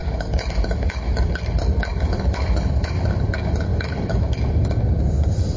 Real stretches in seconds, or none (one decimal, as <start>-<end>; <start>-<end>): 1.3-1.9; 3.0-3.7; 4.4-5.6